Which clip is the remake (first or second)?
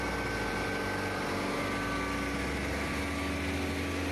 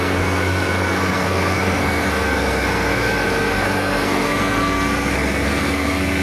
second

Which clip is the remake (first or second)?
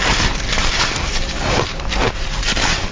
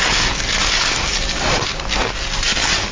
first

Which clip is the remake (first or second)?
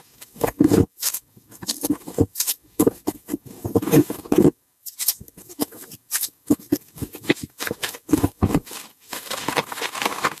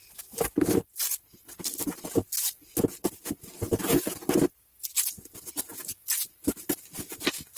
first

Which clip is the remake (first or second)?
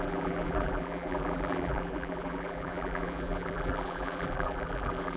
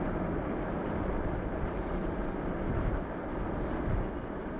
first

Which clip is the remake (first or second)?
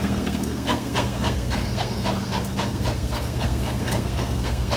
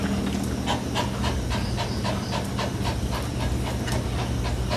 first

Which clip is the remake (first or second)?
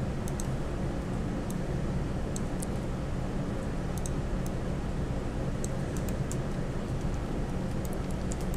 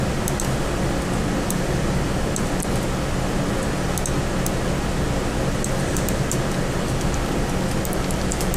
first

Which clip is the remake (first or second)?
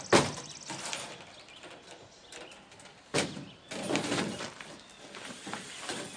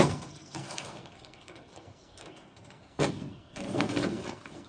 second